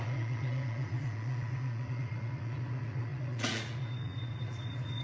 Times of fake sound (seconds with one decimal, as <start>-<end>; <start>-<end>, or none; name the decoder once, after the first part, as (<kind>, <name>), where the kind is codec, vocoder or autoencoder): 0.0-5.0 (vocoder, Vocos)